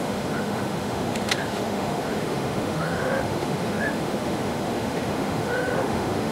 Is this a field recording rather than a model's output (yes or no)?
no